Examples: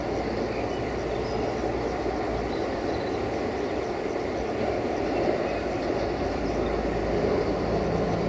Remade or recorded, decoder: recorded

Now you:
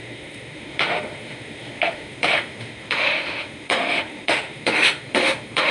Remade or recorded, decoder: remade, autoencoder, DAC-VAE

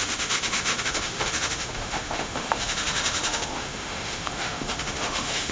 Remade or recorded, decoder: remade, autoencoder, DAC-VAE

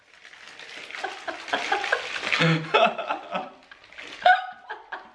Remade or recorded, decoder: recorded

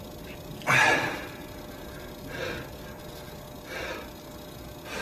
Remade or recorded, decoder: recorded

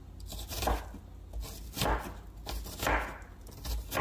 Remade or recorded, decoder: recorded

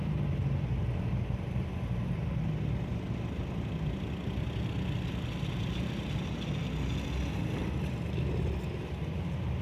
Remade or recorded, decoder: recorded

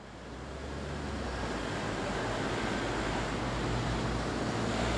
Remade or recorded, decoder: recorded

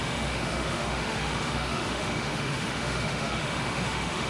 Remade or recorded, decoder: remade, autoencoder, DAC-VAE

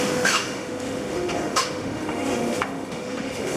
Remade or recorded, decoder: remade, autoencoder, DAC-VAE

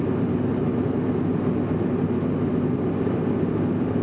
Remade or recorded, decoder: recorded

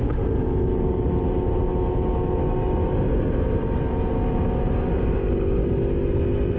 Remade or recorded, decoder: recorded